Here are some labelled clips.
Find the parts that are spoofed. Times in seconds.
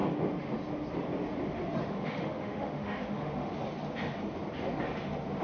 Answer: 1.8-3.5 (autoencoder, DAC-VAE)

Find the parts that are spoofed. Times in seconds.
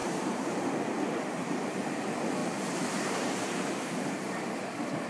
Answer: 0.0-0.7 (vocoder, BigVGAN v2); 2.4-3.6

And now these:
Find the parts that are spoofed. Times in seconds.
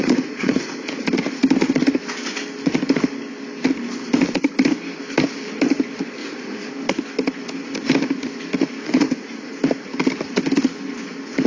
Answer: 0.0-1.1 (vocoder, Vocos); 6.2-6.7; 8.8-9.5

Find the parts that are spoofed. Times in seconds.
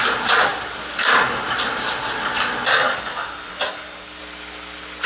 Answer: 2.7-4.2 (codec, DAC)